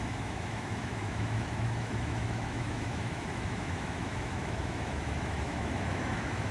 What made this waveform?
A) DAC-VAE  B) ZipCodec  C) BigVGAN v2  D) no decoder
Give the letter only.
A